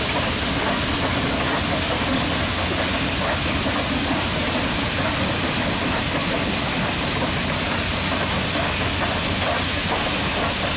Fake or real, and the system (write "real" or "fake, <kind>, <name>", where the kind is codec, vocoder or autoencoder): real